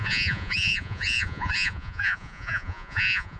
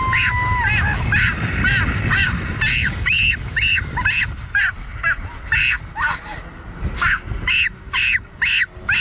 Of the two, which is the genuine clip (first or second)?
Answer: second